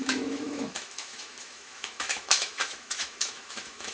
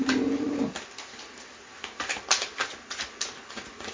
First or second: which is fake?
first